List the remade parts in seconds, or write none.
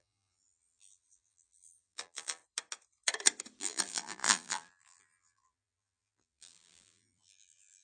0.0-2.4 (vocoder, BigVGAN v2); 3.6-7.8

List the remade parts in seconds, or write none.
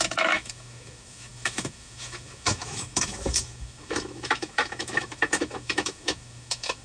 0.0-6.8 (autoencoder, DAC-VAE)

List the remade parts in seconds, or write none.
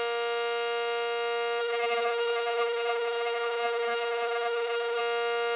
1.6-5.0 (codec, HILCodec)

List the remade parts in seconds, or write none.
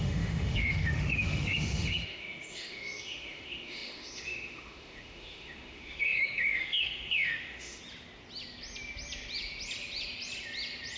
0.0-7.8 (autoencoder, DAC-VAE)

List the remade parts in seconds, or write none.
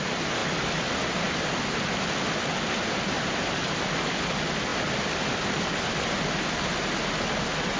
4.7-5.9 (vocoder, BigVGAN v2)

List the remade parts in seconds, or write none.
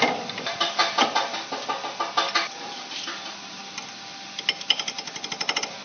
0.0-0.8 (vocoder, BigVGAN v2); 2.5-3.6; 5.3-5.8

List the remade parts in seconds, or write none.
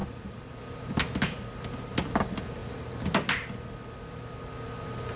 0.0-0.6 (vocoder, BigVGAN v2)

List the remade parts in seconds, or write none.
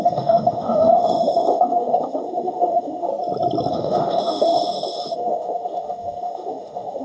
0.0-3.1 (autoencoder, DAC-VAE); 3.7-7.0